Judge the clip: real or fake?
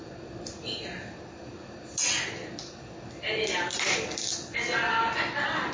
real